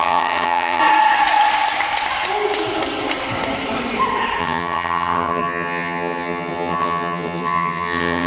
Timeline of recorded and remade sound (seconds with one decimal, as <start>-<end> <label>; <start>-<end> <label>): 0.0-0.8 remade; 0.8-4.4 recorded; 4.4-8.3 remade